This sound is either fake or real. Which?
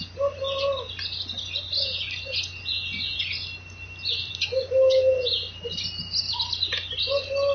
real